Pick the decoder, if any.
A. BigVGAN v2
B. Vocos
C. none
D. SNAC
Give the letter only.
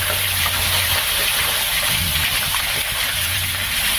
A